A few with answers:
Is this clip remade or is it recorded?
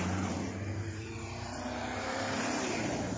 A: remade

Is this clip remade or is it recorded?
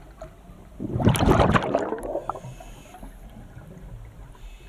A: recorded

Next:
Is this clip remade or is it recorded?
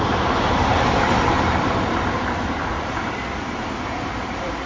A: remade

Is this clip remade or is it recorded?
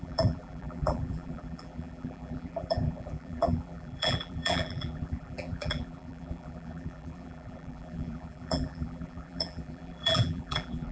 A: remade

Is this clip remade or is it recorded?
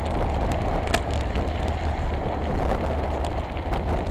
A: recorded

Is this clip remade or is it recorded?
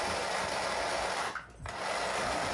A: recorded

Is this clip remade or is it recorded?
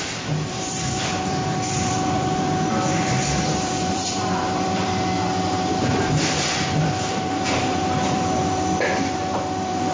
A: remade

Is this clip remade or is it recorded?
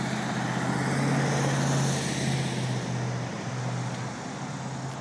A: recorded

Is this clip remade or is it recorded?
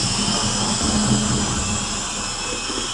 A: recorded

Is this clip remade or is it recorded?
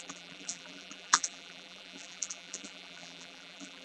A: remade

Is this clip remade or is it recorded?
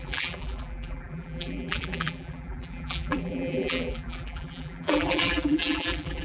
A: remade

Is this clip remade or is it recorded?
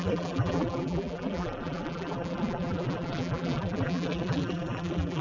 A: remade